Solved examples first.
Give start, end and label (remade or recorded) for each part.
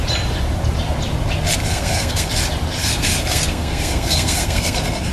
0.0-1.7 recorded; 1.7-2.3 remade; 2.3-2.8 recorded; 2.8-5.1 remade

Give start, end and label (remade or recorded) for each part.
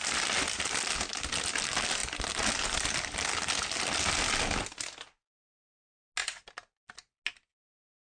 0.0-8.1 recorded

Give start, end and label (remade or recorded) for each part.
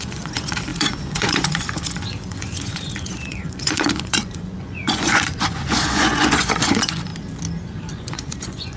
0.0-7.1 remade; 7.1-7.9 recorded; 7.9-8.8 remade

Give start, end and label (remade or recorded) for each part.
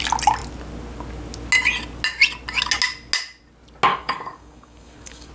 0.0-3.9 recorded; 3.9-5.3 remade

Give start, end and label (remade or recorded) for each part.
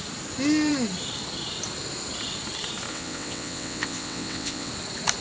0.0-2.9 recorded; 2.9-4.7 remade; 4.7-5.2 recorded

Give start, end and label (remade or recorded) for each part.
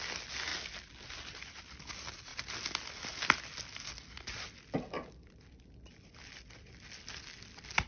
0.0-7.9 recorded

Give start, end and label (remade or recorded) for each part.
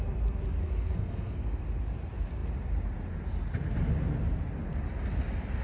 0.0-0.6 recorded; 0.6-1.6 remade; 1.6-5.6 recorded